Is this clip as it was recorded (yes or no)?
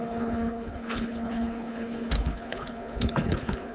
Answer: no